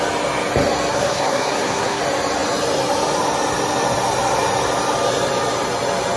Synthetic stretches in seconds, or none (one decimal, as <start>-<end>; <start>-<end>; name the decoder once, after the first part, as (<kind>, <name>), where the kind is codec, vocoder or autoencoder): 0.9-2.0 (codec, SNAC)